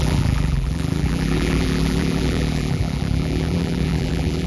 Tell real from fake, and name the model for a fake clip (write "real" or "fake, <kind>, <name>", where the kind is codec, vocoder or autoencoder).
fake, vocoder, BigVGAN v2